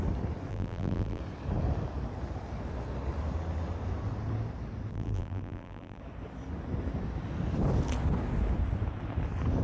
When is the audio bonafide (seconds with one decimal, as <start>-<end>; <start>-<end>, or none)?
0.0-0.5; 1.2-4.9; 6.0-9.6